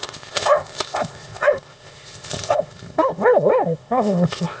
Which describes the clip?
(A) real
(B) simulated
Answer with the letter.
B